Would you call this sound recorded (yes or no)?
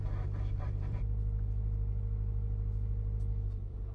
no